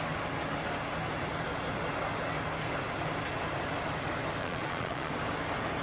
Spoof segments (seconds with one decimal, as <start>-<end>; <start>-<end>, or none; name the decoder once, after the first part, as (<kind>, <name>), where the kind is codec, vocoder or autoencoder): 4.4-5.1 (vocoder, Vocos)